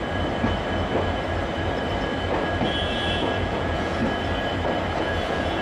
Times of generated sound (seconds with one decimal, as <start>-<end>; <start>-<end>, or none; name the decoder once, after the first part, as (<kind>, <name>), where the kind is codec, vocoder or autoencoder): 2.8-4.0 (vocoder, Vocos); 5.0-5.6